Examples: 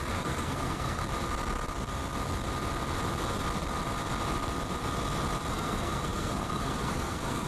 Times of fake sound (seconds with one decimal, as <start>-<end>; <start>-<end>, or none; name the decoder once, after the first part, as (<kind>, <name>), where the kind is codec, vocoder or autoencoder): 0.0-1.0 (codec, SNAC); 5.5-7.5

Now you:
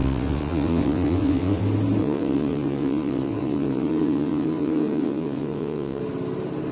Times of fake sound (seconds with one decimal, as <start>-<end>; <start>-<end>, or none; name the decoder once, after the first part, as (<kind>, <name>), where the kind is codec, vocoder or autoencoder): 0.0-1.6 (vocoder, WaveNeXt); 2.0-6.0

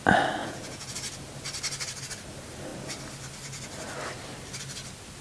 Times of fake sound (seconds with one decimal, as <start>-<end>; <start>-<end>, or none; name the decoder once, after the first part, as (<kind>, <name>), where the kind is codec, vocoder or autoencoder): 0.4-0.9 (vocoder, Vocos)

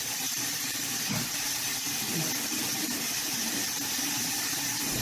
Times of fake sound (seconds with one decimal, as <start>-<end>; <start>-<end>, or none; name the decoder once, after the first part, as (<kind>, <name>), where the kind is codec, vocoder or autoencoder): 0.0-5.0 (vocoder, BigVGAN v2)

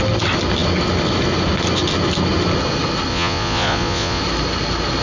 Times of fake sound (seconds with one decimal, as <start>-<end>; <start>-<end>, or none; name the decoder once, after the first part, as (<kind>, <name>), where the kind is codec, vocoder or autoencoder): 3.1-4.2 (vocoder, Vocos)

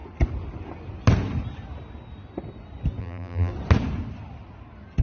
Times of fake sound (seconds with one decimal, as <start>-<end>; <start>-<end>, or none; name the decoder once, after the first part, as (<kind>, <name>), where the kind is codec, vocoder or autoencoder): 3.0-3.5 (vocoder, BigVGAN v2)